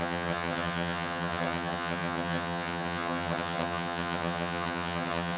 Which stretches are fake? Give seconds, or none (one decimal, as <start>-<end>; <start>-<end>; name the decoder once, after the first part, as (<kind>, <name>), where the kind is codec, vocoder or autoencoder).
0.0-5.4 (vocoder, HiFi-GAN)